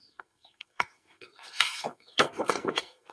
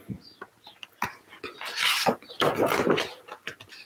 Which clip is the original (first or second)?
second